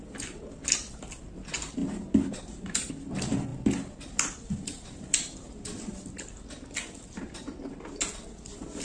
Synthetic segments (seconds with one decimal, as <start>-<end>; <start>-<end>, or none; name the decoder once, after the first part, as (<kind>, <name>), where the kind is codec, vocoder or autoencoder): 1.8-2.9 (vocoder, BigVGAN v2)